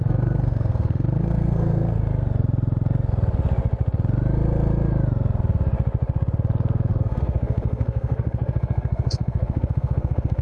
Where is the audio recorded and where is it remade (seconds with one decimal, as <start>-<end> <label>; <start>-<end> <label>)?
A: 0.0-2.0 remade; 2.0-6.9 recorded; 6.9-10.4 remade